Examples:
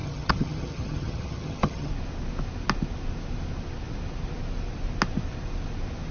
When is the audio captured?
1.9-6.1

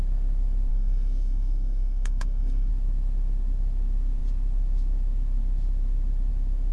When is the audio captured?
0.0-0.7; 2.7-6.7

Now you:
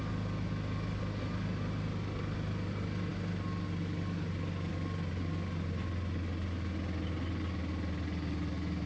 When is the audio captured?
0.0-8.9

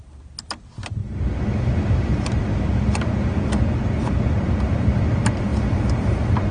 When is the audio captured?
0.0-6.5